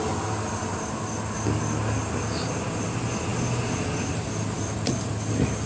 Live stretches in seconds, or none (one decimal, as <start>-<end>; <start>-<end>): 0.0-5.7